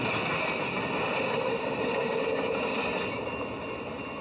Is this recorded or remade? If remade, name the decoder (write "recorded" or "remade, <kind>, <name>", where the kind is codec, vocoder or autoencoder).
recorded